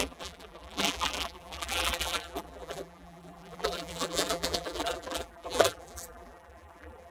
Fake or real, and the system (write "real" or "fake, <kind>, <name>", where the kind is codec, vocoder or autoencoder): fake, vocoder, BigVGAN v2